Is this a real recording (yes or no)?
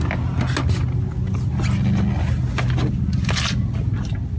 yes